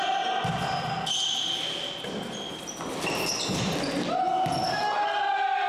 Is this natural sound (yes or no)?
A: yes